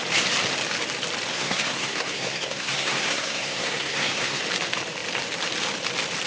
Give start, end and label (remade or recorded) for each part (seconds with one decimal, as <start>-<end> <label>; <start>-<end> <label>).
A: 0.0-1.3 recorded; 1.3-4.4 remade; 4.4-6.3 recorded